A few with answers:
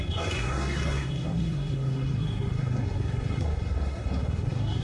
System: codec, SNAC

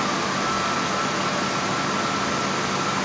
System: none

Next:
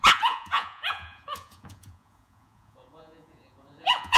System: vocoder, Vocos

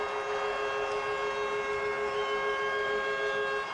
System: none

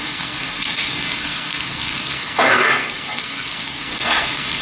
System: codec, SNAC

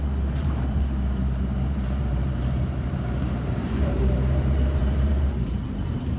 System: vocoder, BigVGAN v2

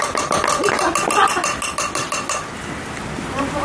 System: none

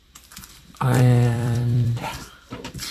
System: vocoder, BigVGAN v2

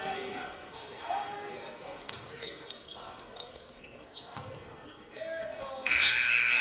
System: codec, SNAC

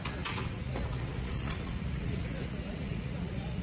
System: vocoder, Vocos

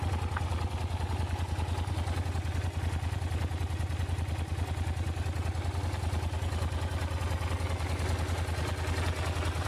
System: none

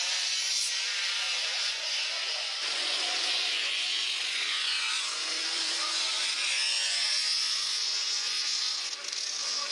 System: vocoder, Vocos